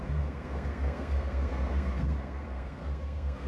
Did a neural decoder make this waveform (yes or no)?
yes